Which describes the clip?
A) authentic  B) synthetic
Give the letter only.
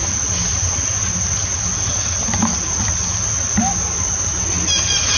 A